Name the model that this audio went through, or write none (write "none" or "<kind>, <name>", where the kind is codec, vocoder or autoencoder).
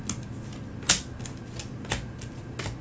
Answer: none